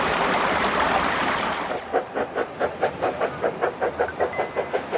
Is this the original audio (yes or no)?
yes